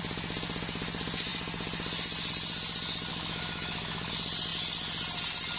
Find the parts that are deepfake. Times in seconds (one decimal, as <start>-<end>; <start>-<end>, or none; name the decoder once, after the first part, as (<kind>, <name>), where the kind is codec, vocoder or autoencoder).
3.1-4.1 (autoencoder, DAC-VAE)